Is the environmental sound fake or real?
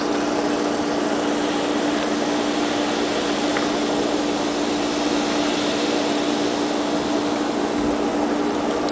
real